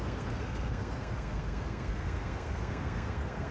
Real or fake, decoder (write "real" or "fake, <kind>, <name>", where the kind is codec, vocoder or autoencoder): fake, codec, SNAC